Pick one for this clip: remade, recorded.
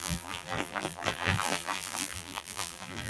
remade